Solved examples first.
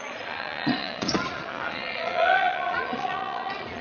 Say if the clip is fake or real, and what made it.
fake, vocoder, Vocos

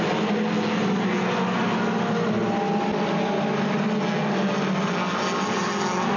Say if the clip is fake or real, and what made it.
real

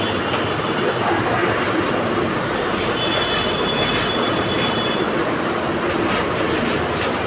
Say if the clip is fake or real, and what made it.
real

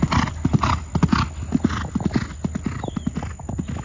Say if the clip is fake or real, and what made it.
real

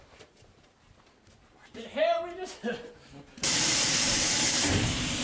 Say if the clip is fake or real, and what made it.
fake, vocoder, BigVGAN v2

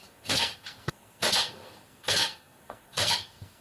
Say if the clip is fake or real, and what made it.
fake, codec, SNAC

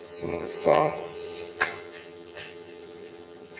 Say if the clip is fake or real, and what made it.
fake, vocoder, HiFi-GAN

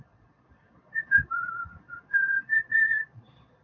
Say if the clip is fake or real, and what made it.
fake, vocoder, Vocos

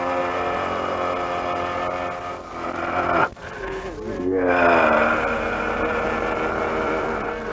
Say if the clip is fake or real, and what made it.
real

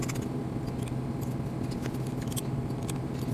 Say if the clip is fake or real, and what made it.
real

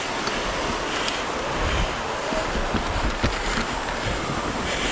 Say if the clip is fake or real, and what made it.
real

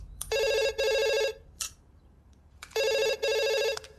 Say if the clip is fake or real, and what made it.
fake, vocoder, BigVGAN v2